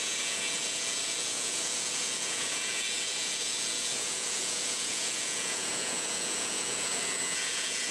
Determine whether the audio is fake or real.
fake